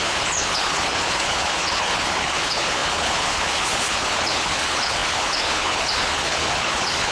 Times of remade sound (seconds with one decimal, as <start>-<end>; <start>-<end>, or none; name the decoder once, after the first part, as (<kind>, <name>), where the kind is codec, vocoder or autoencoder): 0.0-7.1 (codec, HILCodec)